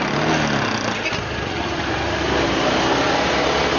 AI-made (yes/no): no